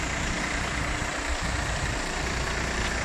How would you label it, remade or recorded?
remade